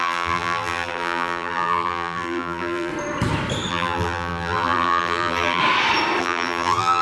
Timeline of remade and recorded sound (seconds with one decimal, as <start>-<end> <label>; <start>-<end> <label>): 0.0-2.9 remade; 2.9-3.7 recorded; 3.7-5.6 remade; 5.6-6.2 recorded; 6.2-7.0 remade

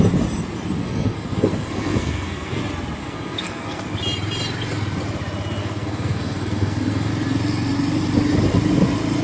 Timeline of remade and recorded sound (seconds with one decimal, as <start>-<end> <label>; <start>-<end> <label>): 0.0-0.8 recorded; 0.8-2.6 remade; 2.6-3.0 recorded; 3.0-3.8 remade; 3.8-5.6 recorded; 5.6-7.1 remade; 7.1-9.2 recorded

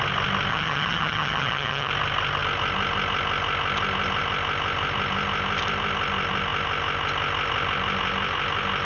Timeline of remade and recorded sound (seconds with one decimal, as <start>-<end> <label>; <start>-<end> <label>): 0.0-0.5 recorded; 0.5-1.9 remade; 1.9-8.8 recorded

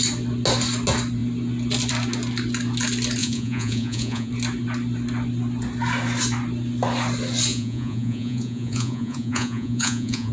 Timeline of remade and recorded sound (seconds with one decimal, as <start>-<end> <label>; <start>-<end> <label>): 0.0-3.2 recorded; 3.2-4.3 remade; 4.3-7.5 recorded; 7.5-10.3 remade

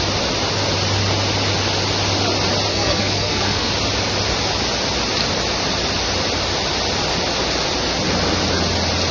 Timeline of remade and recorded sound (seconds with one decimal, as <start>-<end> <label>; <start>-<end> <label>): 0.0-2.7 recorded; 2.7-3.7 remade; 3.7-9.1 recorded